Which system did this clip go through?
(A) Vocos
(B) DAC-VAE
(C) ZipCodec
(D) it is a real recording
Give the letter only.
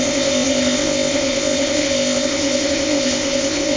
C